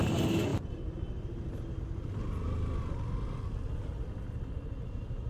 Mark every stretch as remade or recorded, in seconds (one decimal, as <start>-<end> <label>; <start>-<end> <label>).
0.0-5.3 recorded